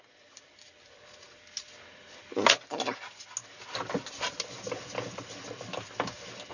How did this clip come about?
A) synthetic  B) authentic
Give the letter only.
B